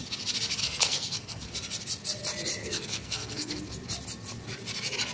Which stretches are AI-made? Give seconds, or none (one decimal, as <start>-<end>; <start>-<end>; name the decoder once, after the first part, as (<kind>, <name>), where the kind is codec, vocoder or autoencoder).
0.6-1.5 (codec, SNAC); 2.6-3.6